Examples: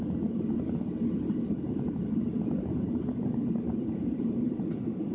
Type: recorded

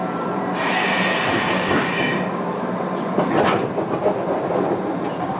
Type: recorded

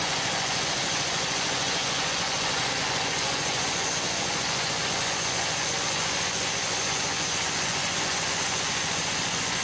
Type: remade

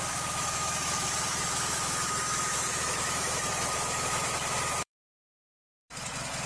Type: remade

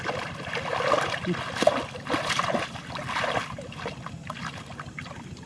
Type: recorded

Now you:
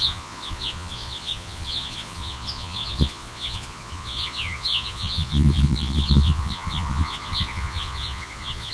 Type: remade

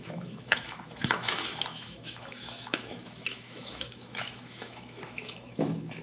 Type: remade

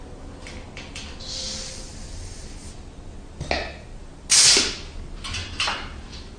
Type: recorded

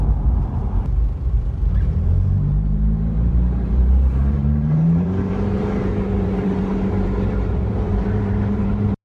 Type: remade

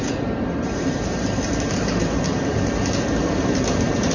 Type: remade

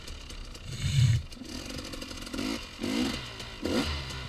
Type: recorded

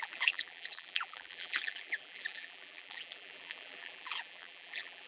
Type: remade